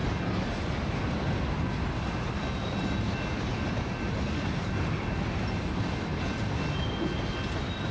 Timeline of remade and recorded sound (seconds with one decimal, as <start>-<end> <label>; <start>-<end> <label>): 0.0-7.9 recorded